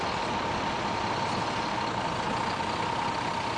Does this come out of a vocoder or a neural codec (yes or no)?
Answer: no